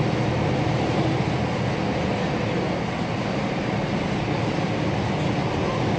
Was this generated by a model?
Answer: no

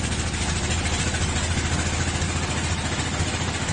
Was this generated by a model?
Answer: no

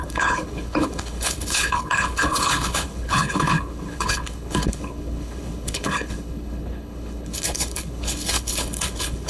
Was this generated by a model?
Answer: yes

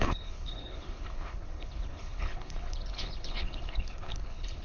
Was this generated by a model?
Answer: yes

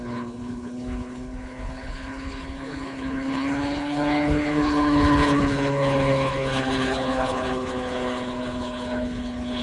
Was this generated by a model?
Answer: yes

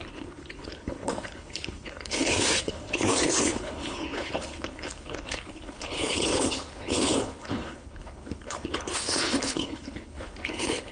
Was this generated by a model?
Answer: yes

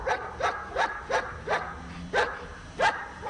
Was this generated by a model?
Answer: no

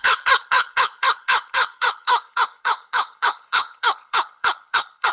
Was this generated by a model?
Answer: yes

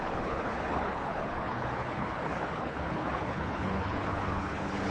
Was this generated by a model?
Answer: yes